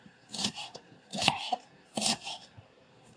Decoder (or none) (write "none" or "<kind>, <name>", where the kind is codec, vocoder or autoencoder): codec, SNAC